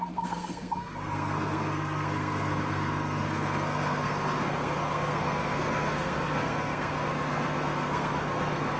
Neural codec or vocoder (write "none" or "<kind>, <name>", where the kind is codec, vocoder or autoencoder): codec, SNAC